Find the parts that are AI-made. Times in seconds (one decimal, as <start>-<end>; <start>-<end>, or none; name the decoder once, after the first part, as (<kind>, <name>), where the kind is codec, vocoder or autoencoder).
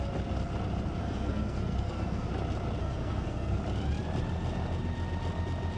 1.0-2.3 (codec, SNAC); 2.8-3.6